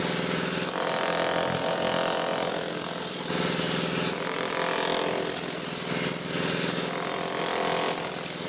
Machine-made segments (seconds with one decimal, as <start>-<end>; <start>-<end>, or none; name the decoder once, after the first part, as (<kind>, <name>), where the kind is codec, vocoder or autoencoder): none